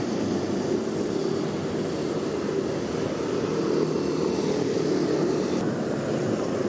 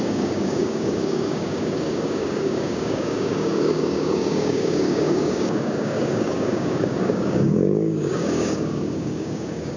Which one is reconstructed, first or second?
second